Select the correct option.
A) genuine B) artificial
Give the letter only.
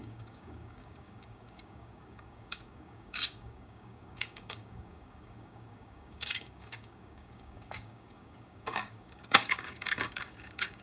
B